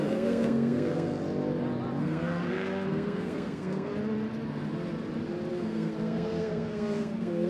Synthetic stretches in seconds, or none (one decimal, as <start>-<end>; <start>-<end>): 0.0-1.1; 2.0-3.9; 5.5-7.5